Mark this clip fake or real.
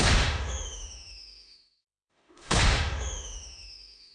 fake